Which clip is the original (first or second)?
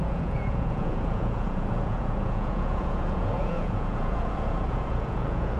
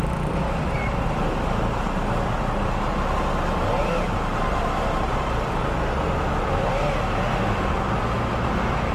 second